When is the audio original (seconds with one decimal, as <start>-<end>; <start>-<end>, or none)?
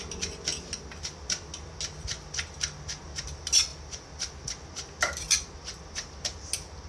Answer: 0.0-6.9